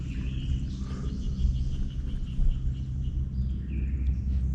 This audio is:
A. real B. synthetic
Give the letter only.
A